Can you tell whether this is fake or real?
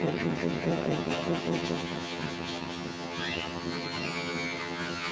fake